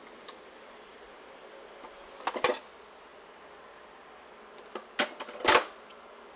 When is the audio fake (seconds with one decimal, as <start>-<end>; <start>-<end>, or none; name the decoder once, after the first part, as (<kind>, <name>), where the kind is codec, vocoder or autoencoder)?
none